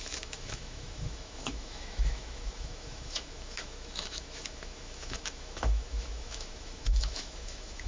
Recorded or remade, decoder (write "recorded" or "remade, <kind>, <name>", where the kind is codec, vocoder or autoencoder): remade, autoencoder, DAC-VAE